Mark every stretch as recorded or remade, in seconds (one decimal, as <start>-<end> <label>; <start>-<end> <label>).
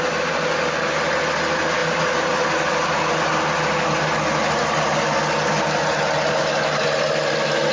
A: 0.0-7.7 recorded